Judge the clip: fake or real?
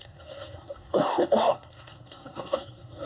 fake